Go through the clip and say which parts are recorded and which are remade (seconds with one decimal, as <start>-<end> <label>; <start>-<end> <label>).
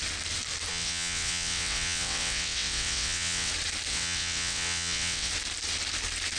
0.0-0.7 recorded; 0.7-3.5 remade; 3.5-3.9 recorded; 3.9-5.3 remade; 5.3-6.4 recorded